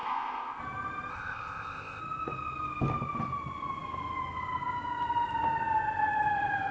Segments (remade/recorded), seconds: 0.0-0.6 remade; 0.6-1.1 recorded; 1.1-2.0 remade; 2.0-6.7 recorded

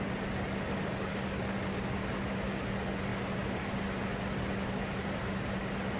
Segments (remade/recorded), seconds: 0.0-1.1 recorded; 1.1-2.3 remade; 2.3-6.0 recorded

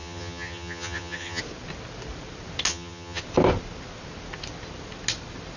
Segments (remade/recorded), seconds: 0.0-1.4 remade; 1.4-2.7 recorded; 2.7-3.2 remade; 3.2-5.6 recorded

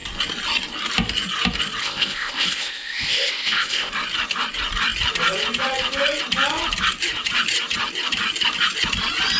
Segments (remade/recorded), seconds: 0.0-1.8 recorded; 1.8-3.9 remade; 3.9-9.4 recorded

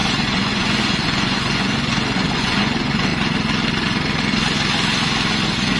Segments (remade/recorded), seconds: 0.0-3.1 remade; 3.1-5.8 recorded

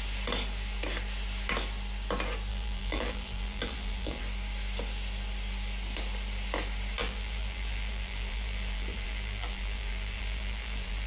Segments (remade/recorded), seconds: 0.0-2.5 recorded; 2.5-4.2 remade; 4.2-7.0 recorded; 7.0-11.1 remade

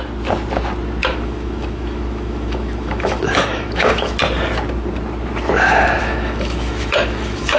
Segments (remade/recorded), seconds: 0.0-1.0 recorded; 1.0-4.1 remade; 4.1-6.0 recorded; 6.0-7.6 remade

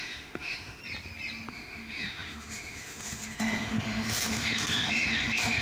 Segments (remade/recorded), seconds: 0.0-0.8 remade; 0.8-1.5 recorded; 1.5-5.6 remade